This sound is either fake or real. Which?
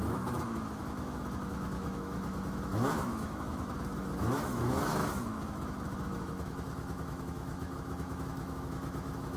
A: fake